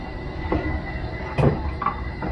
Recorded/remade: recorded